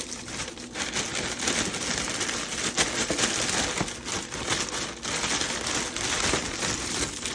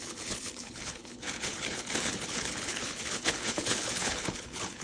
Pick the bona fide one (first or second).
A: first